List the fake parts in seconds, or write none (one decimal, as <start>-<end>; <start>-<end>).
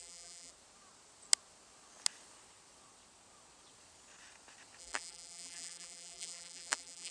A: 0.0-0.5; 4.8-7.1